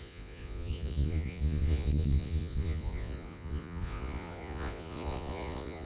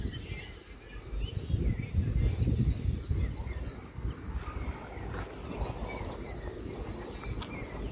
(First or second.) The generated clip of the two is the first